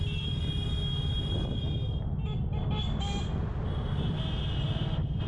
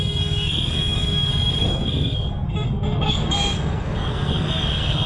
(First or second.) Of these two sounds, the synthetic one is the second